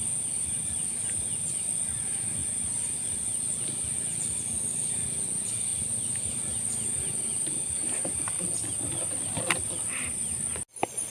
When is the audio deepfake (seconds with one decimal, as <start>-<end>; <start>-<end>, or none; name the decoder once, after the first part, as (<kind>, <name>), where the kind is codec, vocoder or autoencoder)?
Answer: none